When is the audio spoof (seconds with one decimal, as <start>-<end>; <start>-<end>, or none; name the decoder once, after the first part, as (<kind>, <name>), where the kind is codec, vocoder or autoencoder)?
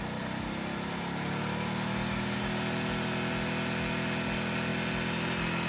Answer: none